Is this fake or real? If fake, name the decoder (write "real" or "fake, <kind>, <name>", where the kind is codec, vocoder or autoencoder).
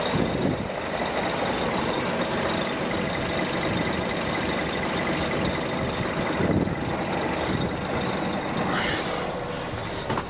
real